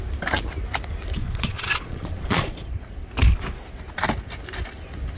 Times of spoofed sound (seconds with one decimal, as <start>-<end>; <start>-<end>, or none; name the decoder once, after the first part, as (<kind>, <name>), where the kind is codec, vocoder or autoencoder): 1.2-2.7 (vocoder, Vocos)